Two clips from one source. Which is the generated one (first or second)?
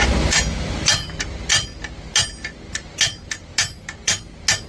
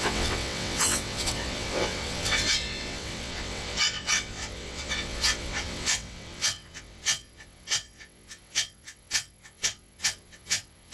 second